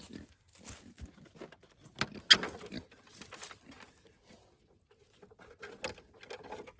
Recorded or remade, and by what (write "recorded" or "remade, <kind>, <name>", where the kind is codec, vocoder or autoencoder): recorded